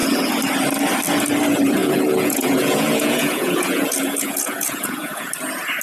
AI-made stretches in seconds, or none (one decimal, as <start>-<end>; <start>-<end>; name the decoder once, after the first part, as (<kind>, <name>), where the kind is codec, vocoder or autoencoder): 1.8-5.3 (vocoder, Vocos)